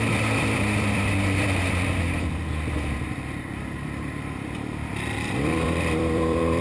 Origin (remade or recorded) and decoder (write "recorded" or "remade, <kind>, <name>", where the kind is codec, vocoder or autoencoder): remade, vocoder, BigVGAN v2